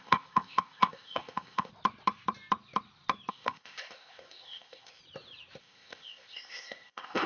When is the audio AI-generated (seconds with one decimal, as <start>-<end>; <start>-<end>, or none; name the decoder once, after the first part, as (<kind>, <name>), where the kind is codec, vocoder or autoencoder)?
0.0-1.7 (codec, ZipCodec); 3.3-5.0; 5.6-7.3